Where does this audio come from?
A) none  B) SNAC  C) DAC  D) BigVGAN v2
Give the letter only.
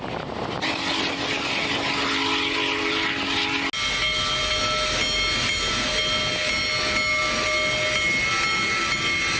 A